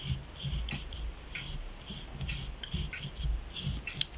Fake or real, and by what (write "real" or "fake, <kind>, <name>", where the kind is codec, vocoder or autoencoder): real